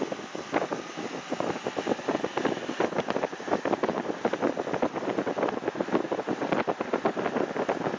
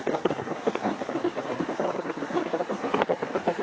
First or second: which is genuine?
first